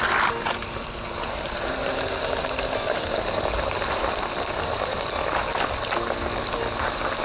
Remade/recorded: recorded